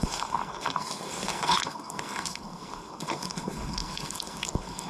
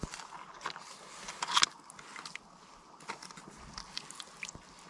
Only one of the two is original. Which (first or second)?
second